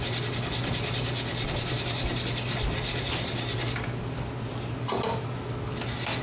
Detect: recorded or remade recorded